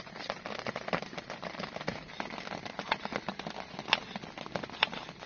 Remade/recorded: recorded